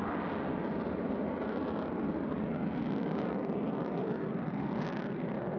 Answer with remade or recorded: recorded